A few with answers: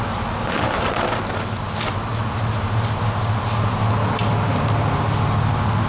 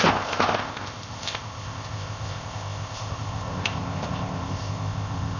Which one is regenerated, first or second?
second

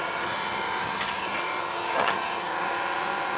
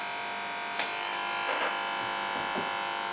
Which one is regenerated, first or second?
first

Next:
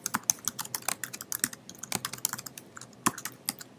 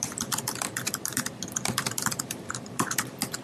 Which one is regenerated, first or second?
second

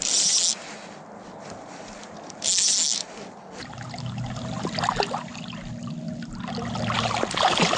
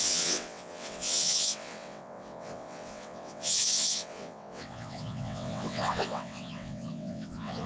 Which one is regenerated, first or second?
second